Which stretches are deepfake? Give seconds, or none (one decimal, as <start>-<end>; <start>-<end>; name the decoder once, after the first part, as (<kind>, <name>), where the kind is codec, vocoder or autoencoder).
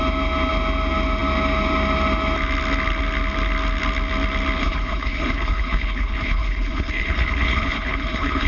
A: 4.6-8.5 (codec, HILCodec)